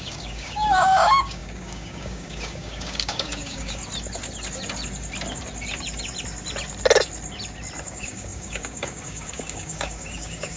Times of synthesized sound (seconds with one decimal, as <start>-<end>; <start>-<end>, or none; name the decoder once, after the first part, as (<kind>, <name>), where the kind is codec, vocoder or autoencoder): 0.0-3.8 (codec, DAC); 7.8-10.6